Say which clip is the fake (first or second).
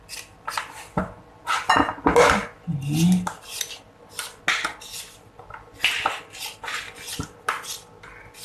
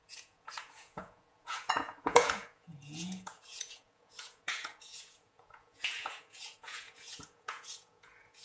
second